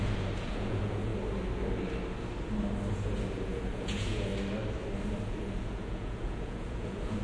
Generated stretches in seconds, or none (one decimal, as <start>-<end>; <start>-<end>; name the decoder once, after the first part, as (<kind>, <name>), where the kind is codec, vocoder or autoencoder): 0.0-1.1 (vocoder, Vocos); 2.9-4.3; 5.2-7.2